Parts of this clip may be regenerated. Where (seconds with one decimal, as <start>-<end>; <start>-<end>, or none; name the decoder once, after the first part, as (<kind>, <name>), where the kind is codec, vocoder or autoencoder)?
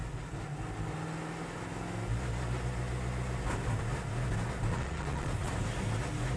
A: 4.7-5.5 (vocoder, Vocos)